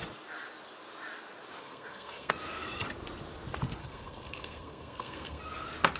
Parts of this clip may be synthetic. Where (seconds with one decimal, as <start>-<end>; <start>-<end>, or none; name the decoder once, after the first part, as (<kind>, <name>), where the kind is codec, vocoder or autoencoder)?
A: 1.6-2.3 (codec, SNAC); 3.8-5.4